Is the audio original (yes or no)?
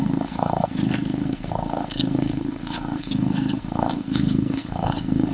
no